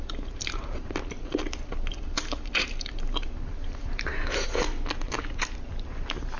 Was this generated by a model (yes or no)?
no